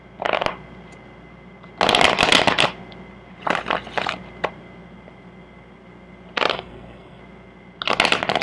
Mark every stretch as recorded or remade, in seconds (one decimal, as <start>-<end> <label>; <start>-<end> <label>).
0.0-6.5 recorded; 6.5-7.2 remade; 7.2-8.4 recorded